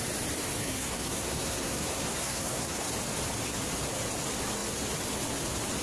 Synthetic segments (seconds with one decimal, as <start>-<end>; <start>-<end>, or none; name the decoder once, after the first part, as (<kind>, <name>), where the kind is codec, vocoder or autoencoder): 0.6-2.9 (codec, SNAC)